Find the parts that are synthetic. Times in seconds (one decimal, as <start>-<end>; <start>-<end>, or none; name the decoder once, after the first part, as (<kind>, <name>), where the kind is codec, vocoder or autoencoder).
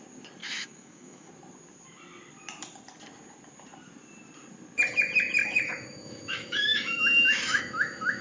0.4-1.3 (autoencoder, DAC-VAE); 5.4-8.2